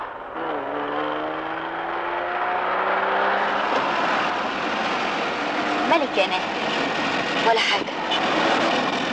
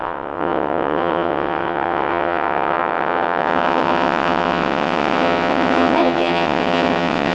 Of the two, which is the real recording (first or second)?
first